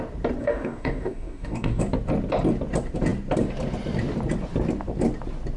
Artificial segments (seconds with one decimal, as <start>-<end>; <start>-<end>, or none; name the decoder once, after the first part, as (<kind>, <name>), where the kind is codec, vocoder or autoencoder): 0.4-1.8 (codec, DAC)